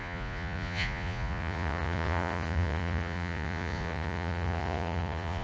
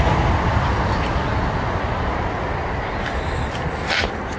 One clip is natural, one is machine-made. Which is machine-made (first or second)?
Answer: first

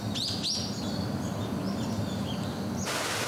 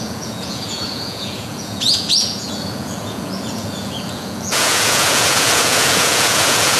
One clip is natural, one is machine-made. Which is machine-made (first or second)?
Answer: second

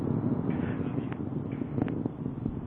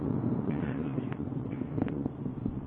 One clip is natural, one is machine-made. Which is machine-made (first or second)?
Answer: second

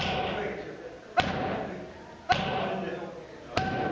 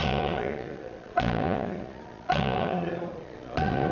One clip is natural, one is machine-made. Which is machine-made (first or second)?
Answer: second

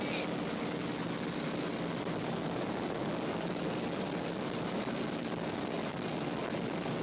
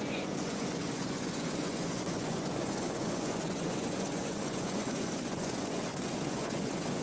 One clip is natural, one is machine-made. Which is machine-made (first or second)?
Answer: second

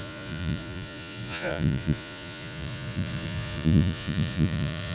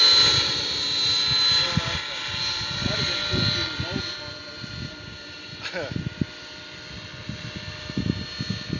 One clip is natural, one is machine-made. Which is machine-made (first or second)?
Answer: first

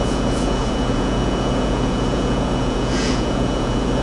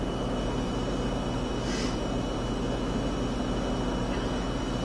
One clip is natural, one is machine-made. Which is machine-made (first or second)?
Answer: first